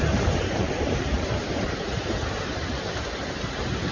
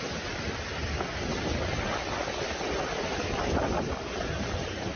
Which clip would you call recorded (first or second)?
second